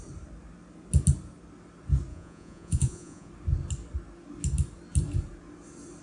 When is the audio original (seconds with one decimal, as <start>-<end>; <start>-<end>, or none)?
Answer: 0.0-2.1; 3.3-6.0